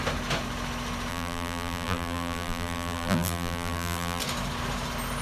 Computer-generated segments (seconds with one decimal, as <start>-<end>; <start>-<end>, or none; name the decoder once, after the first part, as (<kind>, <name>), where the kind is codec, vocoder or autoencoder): 1.1-4.2 (vocoder, BigVGAN v2)